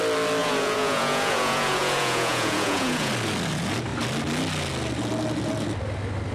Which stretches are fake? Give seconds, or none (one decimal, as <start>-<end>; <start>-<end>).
0.4-3.1